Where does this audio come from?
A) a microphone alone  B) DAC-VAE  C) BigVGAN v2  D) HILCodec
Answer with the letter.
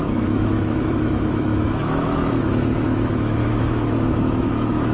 B